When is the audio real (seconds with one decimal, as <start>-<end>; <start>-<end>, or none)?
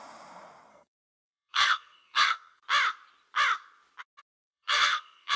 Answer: 0.0-0.7; 2.6-4.4